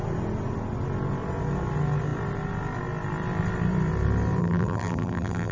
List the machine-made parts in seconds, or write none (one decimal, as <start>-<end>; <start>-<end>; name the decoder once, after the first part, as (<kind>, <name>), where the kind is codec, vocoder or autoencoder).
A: 4.4-5.5 (vocoder, BigVGAN v2)